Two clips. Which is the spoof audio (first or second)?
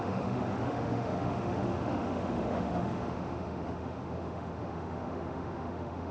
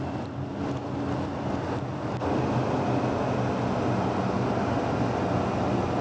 first